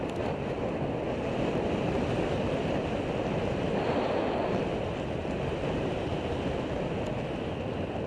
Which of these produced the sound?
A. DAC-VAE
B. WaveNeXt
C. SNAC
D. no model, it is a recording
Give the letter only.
D